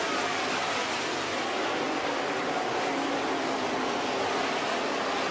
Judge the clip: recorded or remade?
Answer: recorded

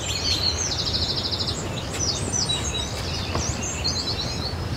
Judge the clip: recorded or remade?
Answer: recorded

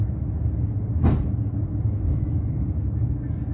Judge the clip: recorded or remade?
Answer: recorded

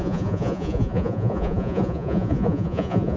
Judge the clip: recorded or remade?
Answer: remade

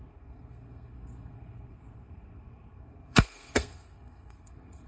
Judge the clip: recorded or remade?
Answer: remade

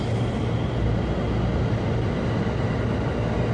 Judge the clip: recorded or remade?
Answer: recorded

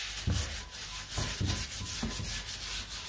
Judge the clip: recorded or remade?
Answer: recorded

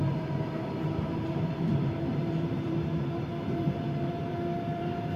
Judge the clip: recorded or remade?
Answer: remade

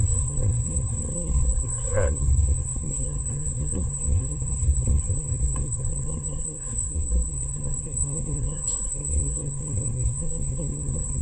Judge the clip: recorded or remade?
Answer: remade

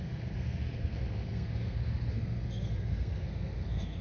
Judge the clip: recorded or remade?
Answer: remade